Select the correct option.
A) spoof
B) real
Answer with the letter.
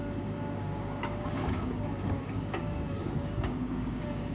A